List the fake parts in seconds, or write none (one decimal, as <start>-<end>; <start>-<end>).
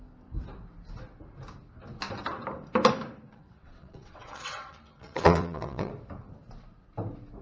3.3-5.9